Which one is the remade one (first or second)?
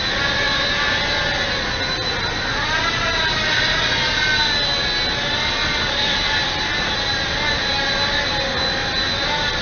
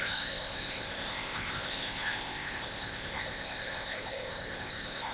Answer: second